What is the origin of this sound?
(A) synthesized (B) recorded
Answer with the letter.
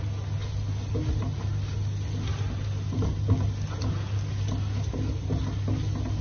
B